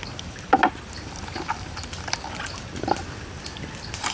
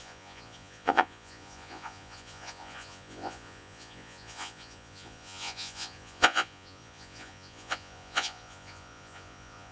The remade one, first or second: second